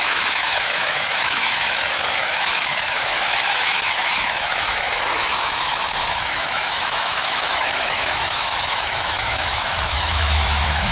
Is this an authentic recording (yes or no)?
no